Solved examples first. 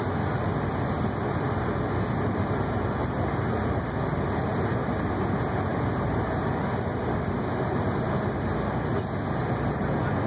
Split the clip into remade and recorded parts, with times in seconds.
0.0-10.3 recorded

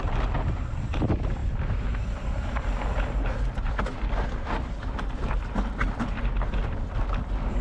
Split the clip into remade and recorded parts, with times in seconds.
0.0-7.6 recorded

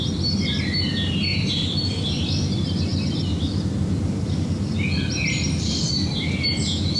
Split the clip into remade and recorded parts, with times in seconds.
0.0-7.0 recorded

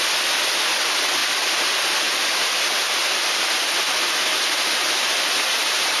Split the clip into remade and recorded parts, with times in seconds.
0.0-6.0 recorded

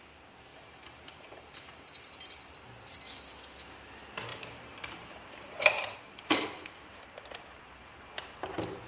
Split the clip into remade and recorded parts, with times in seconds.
0.0-0.5 recorded; 0.5-2.5 remade; 2.5-4.3 recorded; 4.3-8.4 remade; 8.4-8.9 recorded

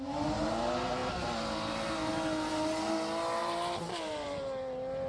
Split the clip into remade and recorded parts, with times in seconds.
0.0-3.4 recorded; 3.4-4.4 remade; 4.4-5.1 recorded

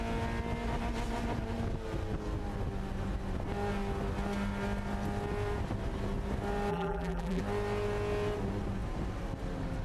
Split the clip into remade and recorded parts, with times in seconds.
0.0-6.7 recorded; 6.7-7.4 remade; 7.4-9.8 recorded